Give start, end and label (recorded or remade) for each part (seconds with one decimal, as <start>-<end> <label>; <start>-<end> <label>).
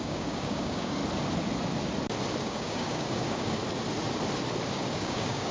0.0-1.0 remade; 1.0-2.4 recorded; 2.4-3.6 remade; 3.6-4.7 recorded; 4.7-5.5 remade